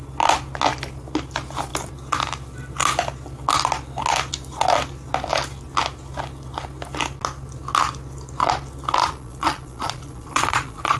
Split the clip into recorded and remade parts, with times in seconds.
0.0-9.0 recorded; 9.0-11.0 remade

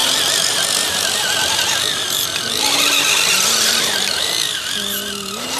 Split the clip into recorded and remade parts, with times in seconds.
0.0-5.6 recorded

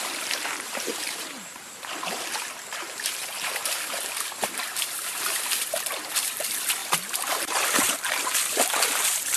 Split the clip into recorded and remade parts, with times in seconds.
0.0-9.4 remade

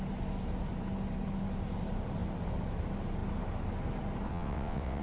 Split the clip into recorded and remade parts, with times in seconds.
0.0-4.3 recorded; 4.3-5.0 remade

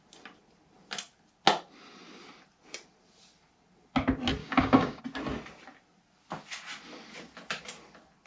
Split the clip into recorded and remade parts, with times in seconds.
0.0-4.4 recorded; 4.4-5.0 remade; 5.0-8.3 recorded

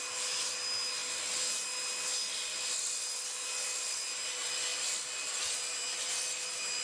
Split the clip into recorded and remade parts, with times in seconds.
0.0-6.8 recorded

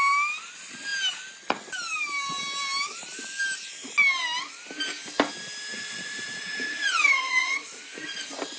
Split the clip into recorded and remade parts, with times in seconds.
0.0-5.7 recorded; 5.7-8.2 remade; 8.2-8.6 recorded